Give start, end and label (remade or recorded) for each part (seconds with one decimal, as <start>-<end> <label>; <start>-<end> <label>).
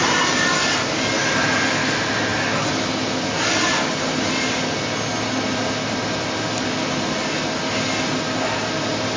0.0-9.2 recorded